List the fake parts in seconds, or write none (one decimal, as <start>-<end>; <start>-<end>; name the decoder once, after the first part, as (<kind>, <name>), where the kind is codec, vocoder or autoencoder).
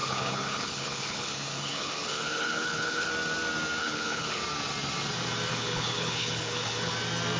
0.0-3.1 (codec, HILCodec); 3.8-4.4; 5.5-6.9